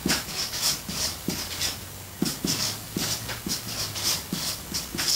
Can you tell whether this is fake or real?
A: fake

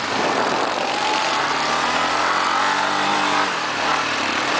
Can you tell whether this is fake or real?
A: real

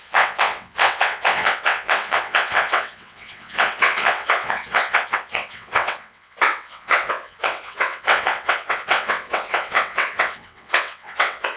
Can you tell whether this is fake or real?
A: fake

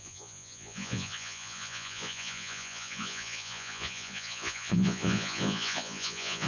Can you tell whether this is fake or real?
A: fake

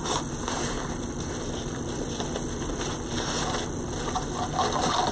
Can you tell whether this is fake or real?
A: real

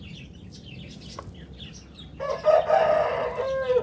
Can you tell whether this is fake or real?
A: real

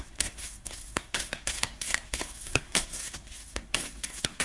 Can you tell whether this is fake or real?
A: fake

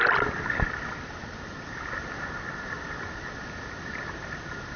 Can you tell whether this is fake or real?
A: real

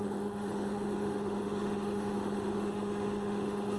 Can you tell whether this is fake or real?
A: fake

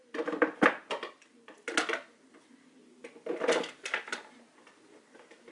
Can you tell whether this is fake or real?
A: real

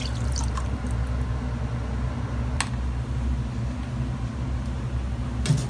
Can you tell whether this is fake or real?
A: real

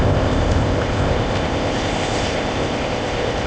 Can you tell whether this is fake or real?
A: fake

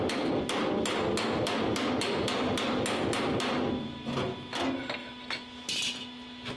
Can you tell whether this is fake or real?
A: real